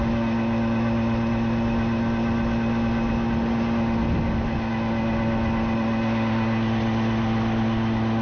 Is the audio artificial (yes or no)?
no